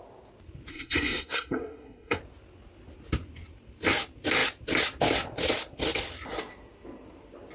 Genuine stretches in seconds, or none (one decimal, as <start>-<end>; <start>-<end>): 0.0-0.7; 2.2-7.5